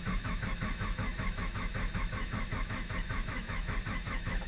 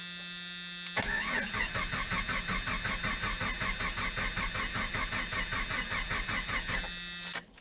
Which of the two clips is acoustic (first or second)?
second